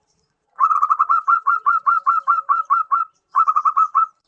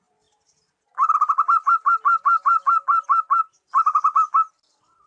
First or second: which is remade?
first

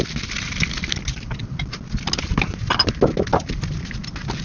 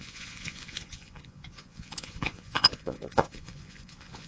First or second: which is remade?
second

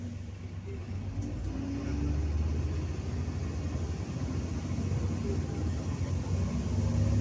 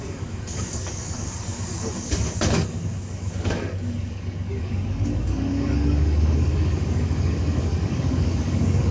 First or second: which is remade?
second